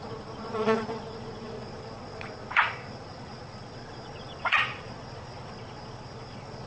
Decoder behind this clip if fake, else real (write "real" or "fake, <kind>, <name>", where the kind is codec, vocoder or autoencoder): fake, vocoder, Vocos